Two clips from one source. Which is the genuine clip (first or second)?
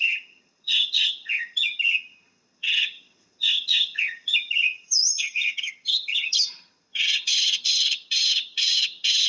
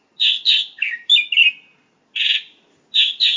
second